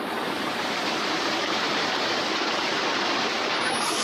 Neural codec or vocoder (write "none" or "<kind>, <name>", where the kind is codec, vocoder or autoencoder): vocoder, BigVGAN v2